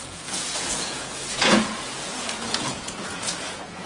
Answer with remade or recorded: remade